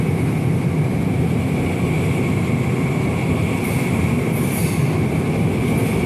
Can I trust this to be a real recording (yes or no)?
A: yes